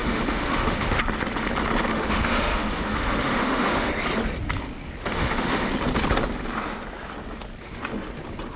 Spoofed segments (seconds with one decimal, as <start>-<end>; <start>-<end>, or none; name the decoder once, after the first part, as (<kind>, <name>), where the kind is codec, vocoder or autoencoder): 0.0-1.0 (autoencoder, DAC-VAE); 1.9-3.9; 5.0-5.7